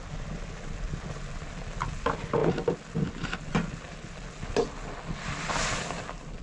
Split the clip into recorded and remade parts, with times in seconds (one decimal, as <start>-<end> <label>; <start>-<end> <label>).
0.0-6.4 recorded